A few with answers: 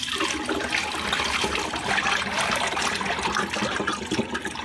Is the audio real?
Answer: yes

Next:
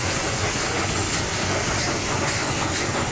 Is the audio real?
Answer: no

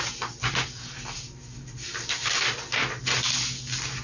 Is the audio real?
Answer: yes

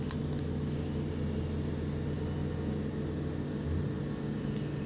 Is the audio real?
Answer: yes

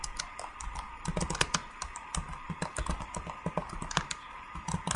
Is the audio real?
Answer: yes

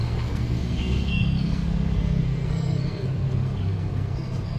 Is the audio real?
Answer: no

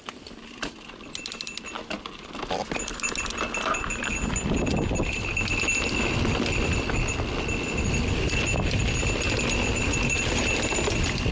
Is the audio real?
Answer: yes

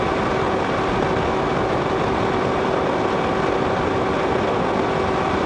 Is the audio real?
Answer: yes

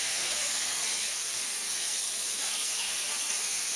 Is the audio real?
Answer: no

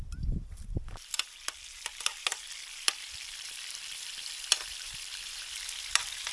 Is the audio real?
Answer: no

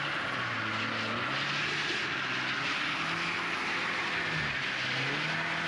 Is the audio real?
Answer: yes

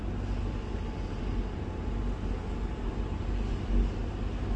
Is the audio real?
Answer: yes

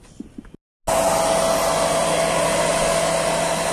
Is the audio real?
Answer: yes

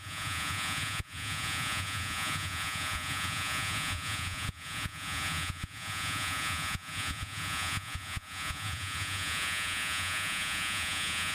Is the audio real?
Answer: no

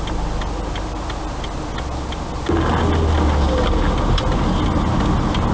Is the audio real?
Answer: yes